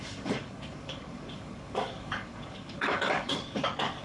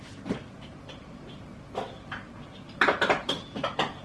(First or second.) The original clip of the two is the second